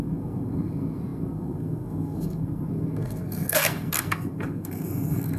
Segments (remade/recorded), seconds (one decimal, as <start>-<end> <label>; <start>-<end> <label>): 0.0-5.4 remade